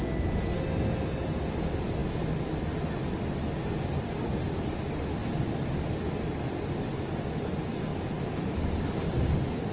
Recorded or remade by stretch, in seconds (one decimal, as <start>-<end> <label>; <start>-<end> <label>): 0.0-9.7 recorded